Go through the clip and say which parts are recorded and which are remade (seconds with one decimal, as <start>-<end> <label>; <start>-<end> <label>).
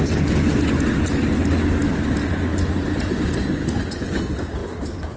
0.0-4.6 recorded; 4.6-5.2 remade